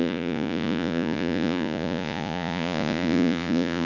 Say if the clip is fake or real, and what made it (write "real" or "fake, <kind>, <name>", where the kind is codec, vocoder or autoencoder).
fake, vocoder, Vocos